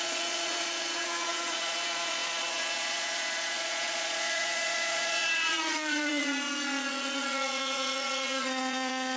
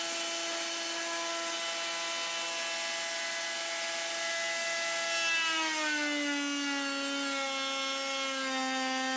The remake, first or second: first